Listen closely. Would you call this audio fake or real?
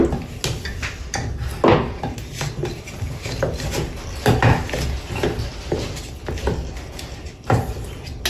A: real